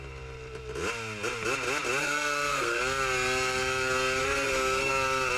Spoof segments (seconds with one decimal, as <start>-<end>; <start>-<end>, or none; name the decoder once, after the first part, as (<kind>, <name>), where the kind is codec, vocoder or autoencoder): 2.0-2.8 (codec, SNAC); 4.2-4.9